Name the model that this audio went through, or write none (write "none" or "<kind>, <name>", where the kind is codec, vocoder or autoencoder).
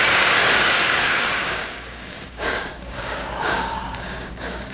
codec, DAC